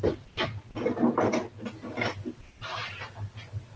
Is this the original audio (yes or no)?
yes